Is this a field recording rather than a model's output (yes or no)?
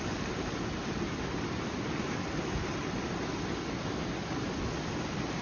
yes